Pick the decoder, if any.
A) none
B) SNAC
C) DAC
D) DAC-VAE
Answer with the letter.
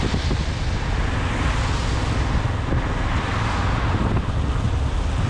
A